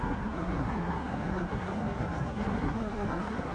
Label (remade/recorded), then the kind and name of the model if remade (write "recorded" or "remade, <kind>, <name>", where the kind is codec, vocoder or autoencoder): remade, codec, SNAC